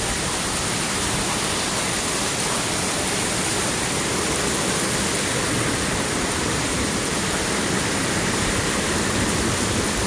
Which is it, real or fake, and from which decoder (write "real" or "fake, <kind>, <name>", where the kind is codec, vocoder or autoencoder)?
real